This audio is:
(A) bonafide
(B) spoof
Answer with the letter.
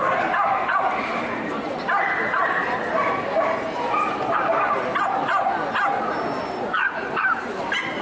A